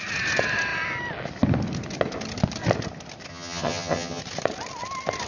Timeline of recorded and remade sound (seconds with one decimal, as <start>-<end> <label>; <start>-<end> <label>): 0.0-3.3 recorded; 3.3-4.2 remade; 4.2-5.3 recorded